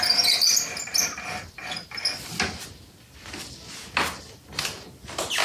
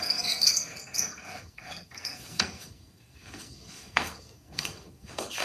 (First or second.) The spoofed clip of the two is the second